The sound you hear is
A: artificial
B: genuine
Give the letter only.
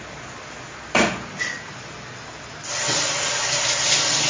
B